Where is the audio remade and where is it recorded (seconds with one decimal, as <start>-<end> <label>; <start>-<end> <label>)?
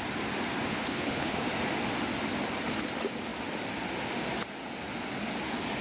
0.0-0.7 recorded; 0.7-1.5 remade; 1.5-5.8 recorded